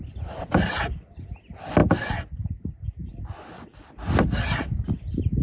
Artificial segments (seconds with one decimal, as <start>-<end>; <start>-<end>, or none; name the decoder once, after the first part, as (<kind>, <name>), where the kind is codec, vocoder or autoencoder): none